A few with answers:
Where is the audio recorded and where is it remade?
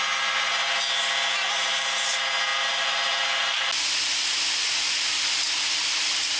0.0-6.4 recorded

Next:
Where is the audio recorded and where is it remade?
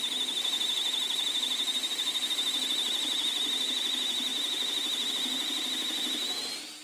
0.0-6.8 recorded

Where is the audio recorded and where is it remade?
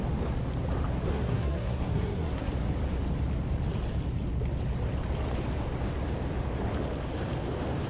0.0-1.1 recorded; 1.1-2.5 remade; 2.5-7.9 recorded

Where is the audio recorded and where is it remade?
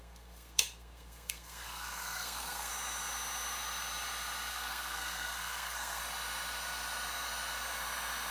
0.0-2.7 remade; 2.7-4.5 recorded; 4.5-6.0 remade; 6.0-8.3 recorded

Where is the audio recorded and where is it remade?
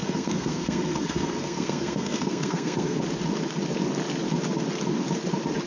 0.0-3.0 remade; 3.0-5.7 recorded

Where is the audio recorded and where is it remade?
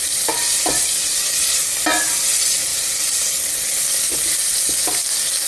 0.0-5.5 recorded